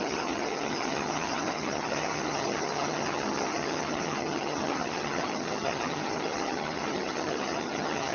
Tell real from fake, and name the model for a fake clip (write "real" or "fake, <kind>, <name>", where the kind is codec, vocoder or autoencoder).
fake, vocoder, HiFi-GAN